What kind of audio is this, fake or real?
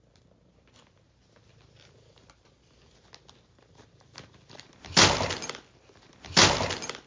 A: real